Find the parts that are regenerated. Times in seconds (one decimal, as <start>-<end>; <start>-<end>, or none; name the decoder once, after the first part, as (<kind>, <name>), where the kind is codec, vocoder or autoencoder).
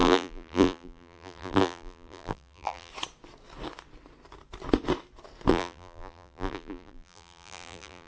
0.0-2.9 (vocoder, BigVGAN v2); 5.5-8.1